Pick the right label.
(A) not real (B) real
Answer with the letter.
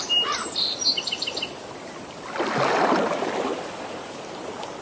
B